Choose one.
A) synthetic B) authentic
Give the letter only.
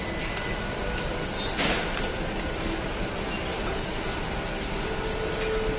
B